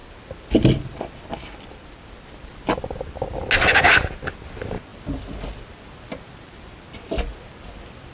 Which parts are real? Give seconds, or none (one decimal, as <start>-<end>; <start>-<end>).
0.0-8.1